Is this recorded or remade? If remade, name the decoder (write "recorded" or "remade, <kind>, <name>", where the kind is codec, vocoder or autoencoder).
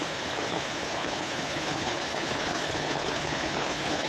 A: remade, codec, HILCodec